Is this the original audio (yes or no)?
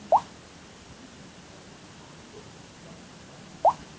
yes